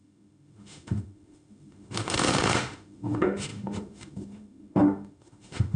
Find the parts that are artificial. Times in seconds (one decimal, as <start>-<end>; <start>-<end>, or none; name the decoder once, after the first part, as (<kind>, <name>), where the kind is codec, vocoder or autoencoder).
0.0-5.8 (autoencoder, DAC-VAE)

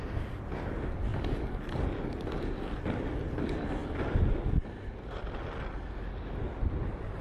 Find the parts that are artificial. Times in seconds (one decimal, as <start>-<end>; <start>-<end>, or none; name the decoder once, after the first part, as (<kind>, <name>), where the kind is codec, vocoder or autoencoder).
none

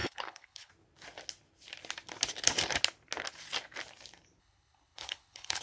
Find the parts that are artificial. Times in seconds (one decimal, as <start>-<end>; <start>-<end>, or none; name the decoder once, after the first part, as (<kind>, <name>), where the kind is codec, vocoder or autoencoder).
0.0-0.7 (codec, HILCodec); 4.4-5.6

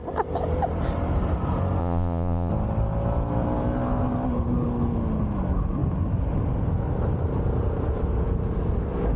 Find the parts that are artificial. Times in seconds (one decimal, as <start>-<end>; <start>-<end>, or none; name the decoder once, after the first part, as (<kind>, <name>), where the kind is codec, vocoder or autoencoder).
1.8-2.5 (vocoder, Vocos)

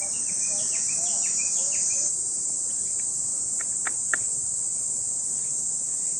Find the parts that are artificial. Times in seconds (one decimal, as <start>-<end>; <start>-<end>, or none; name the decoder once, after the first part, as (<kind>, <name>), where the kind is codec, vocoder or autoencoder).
1.1-2.1 (vocoder, BigVGAN v2)

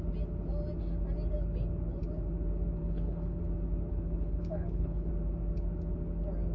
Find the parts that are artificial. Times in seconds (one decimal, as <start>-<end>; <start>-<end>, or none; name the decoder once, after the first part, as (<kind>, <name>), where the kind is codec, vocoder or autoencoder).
2.8-3.4 (codec, HILCodec); 3.9-5.1

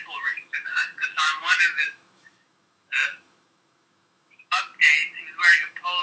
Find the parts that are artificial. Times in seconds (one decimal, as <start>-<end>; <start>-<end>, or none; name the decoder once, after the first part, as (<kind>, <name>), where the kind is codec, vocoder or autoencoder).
0.0-4.7 (autoencoder, DAC-VAE); 5.5-6.0

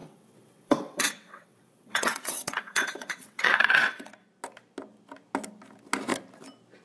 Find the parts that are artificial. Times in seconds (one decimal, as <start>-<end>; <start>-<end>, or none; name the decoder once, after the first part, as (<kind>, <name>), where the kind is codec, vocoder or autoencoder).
0.0-4.1 (vocoder, WaveNeXt)